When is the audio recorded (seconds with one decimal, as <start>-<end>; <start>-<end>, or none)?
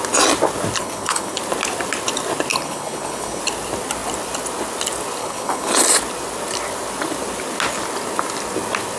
0.0-0.8; 1.4-2.5; 3.4-5.2; 5.7-9.0